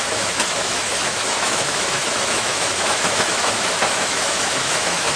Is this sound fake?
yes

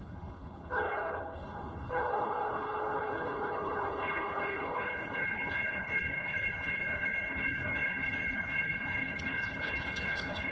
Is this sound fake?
yes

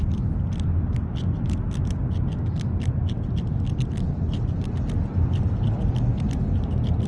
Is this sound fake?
no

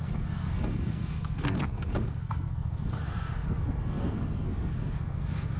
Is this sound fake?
yes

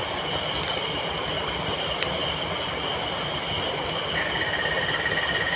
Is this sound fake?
no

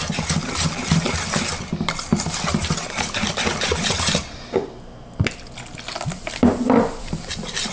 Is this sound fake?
no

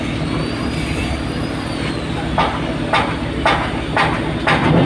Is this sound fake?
no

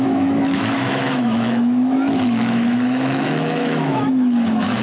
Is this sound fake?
yes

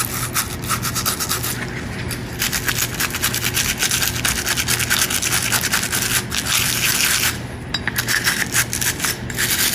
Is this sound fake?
no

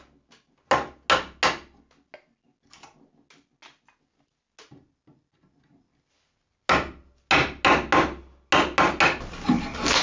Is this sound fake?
no